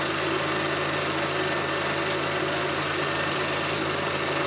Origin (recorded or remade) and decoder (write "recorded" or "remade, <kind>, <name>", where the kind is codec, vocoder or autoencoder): recorded